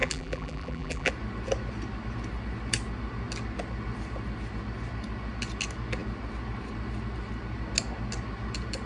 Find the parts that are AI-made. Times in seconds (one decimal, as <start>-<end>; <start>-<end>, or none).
0.0-1.1